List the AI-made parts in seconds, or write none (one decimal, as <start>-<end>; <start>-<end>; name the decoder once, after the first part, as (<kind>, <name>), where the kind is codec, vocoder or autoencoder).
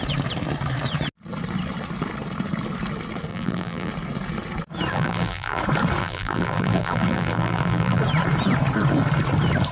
3.3-3.9 (vocoder, BigVGAN v2); 4.9-5.6; 6.0-8.0